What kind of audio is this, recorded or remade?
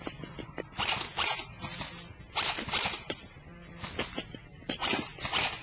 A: recorded